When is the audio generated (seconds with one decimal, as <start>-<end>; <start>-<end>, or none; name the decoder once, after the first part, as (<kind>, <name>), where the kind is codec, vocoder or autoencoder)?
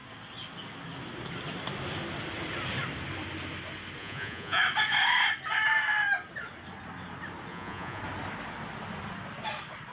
4.0-4.6 (vocoder, Vocos); 7.5-8.0